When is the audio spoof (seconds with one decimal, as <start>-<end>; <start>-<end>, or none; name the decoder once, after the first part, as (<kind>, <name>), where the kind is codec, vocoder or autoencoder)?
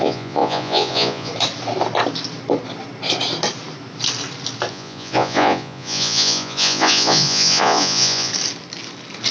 0.0-1.3 (vocoder, Vocos); 4.7-8.3